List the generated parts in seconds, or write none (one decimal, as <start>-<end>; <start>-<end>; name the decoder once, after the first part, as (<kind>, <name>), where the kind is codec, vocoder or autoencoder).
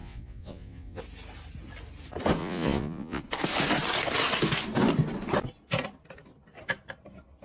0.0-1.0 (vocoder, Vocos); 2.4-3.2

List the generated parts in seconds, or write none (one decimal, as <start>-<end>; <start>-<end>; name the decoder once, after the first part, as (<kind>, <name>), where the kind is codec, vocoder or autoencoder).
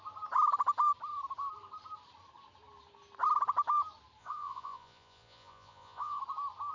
4.2-6.2 (vocoder, Vocos)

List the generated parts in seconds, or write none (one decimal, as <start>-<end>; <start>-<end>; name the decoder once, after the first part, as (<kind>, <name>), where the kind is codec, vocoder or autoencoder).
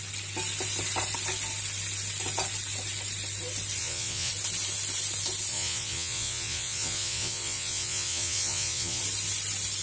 3.8-4.3 (vocoder, Vocos); 5.5-9.0